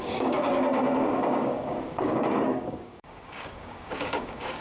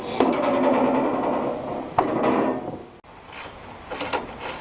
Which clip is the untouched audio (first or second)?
second